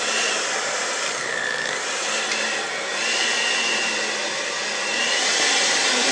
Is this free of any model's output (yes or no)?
yes